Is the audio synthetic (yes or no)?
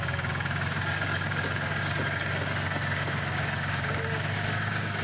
yes